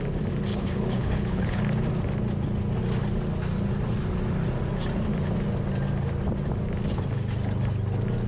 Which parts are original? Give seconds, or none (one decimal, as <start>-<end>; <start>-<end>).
0.0-0.5; 1.6-8.3